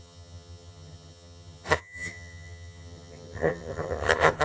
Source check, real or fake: fake